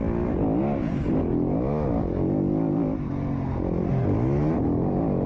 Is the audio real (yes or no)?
yes